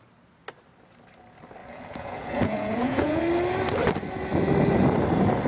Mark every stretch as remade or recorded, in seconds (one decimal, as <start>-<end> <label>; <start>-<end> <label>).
0.0-1.6 recorded; 1.6-3.2 remade; 3.2-5.5 recorded